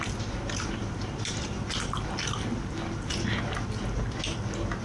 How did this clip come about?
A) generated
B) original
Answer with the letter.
B